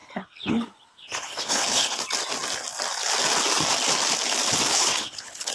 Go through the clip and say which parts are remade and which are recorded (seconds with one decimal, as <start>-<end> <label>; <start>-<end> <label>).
0.0-2.0 remade; 2.0-4.7 recorded; 4.7-5.5 remade